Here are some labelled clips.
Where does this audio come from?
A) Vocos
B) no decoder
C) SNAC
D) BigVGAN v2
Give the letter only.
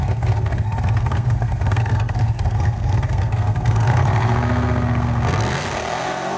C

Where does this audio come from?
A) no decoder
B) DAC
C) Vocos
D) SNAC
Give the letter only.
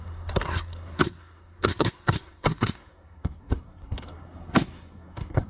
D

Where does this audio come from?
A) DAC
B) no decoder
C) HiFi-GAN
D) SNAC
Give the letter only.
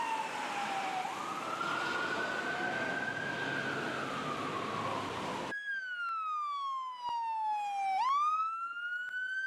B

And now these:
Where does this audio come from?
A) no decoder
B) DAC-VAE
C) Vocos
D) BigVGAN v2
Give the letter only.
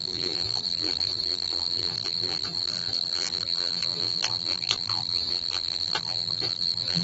D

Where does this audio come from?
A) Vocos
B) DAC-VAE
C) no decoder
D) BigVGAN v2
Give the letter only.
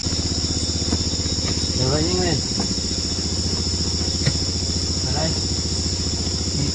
C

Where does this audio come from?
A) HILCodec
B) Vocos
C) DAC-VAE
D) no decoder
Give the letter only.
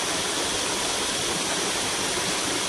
D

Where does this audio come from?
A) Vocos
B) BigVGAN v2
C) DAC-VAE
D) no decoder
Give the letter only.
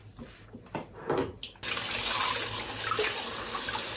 D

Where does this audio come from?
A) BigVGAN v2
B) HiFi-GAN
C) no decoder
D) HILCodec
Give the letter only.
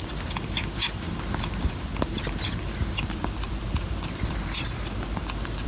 A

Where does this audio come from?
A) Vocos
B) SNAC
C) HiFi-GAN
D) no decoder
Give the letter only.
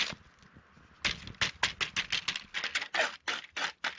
D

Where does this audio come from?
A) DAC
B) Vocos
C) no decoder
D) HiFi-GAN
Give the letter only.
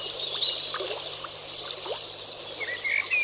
C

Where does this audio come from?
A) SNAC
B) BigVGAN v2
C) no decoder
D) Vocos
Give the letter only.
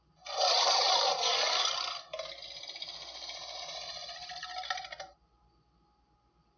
C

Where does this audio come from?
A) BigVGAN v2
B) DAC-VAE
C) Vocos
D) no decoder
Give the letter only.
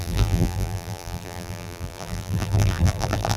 A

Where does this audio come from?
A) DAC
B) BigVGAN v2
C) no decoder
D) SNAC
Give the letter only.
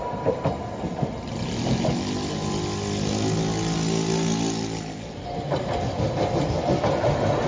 C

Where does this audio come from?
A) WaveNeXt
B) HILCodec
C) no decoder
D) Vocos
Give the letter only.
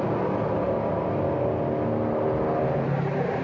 C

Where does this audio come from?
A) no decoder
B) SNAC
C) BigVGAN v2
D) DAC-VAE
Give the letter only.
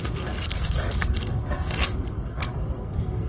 B